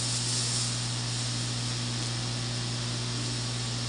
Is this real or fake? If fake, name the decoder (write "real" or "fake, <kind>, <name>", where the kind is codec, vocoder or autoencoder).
real